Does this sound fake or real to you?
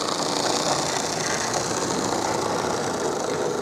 real